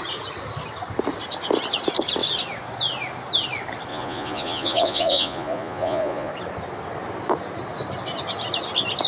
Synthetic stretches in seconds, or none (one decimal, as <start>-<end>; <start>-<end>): 3.9-6.3